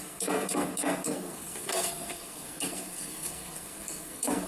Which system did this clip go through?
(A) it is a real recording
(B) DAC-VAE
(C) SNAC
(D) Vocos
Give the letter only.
C